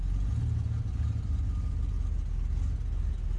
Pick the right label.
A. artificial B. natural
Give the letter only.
B